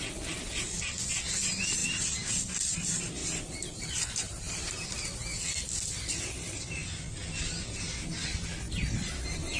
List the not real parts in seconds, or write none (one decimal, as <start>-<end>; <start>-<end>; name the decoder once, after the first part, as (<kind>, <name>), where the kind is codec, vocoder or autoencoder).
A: none